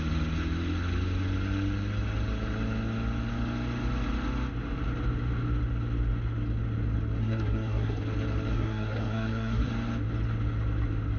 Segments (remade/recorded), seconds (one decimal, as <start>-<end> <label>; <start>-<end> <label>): 0.0-7.2 recorded; 7.2-8.0 remade; 8.0-8.5 recorded; 8.5-9.7 remade; 9.7-11.2 recorded